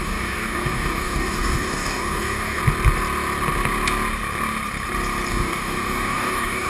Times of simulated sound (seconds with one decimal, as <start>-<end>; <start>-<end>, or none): 0.0-2.6; 5.3-6.7